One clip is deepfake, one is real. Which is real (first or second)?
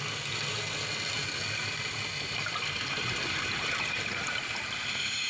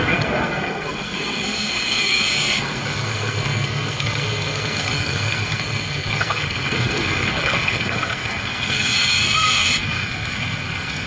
first